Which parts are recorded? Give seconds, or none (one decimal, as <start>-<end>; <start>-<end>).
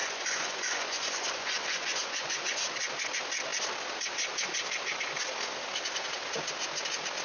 2.6-7.2